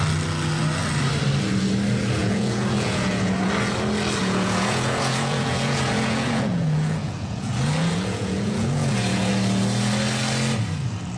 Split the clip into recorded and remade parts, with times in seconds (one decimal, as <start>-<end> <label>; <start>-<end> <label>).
0.0-2.2 recorded; 2.2-3.5 remade; 3.5-4.2 recorded; 4.2-9.3 remade; 9.3-11.2 recorded